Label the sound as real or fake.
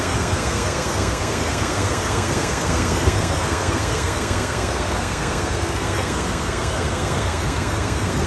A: fake